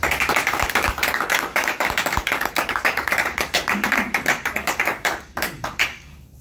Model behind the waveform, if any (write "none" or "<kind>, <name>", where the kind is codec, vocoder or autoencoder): codec, DAC